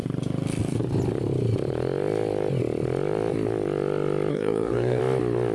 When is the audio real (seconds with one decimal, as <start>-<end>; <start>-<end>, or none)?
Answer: 0.0-4.3; 5.0-5.5